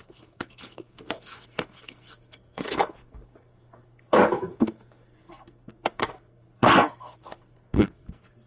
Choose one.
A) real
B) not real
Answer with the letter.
B